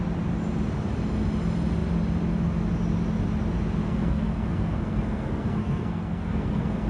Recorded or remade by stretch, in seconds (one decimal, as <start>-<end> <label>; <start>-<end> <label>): 0.0-3.8 recorded; 3.8-6.9 remade